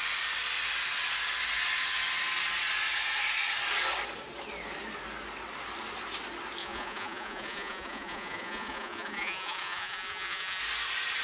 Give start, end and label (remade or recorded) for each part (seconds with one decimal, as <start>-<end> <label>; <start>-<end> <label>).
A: 0.0-6.6 recorded; 6.6-10.6 remade; 10.6-11.2 recorded